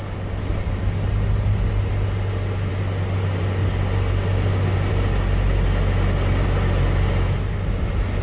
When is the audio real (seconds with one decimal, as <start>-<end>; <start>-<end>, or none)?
0.0-8.2